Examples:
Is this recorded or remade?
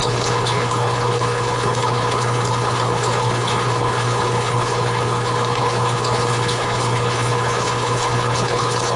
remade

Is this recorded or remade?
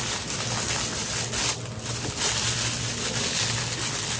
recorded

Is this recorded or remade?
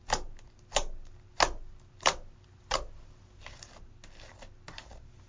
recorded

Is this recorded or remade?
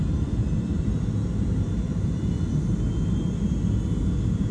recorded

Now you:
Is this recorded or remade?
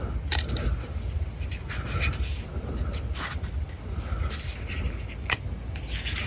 recorded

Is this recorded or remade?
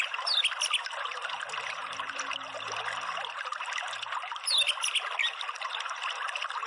recorded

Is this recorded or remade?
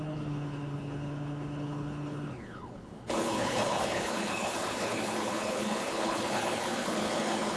remade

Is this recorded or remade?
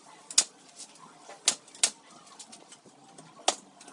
recorded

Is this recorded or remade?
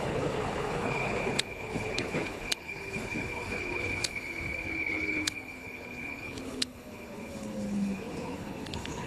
remade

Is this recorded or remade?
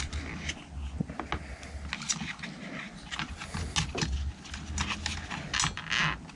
recorded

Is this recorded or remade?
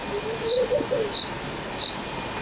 recorded